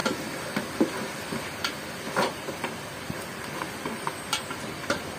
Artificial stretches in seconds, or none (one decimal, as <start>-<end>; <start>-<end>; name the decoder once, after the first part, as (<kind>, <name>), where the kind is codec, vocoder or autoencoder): 0.0-5.2 (vocoder, BigVGAN v2)